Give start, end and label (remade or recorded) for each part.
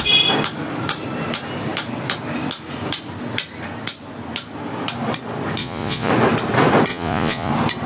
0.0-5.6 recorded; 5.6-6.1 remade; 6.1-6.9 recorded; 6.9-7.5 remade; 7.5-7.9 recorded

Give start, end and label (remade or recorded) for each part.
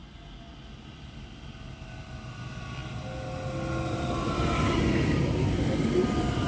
0.0-6.5 recorded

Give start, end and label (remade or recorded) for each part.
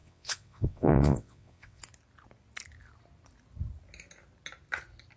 0.0-1.8 remade; 1.8-5.2 recorded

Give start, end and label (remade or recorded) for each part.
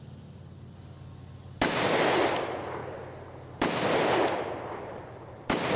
0.0-5.8 recorded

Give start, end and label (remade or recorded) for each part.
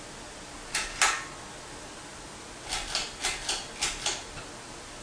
0.0-5.0 recorded